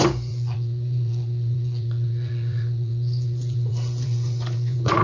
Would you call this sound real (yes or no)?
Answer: no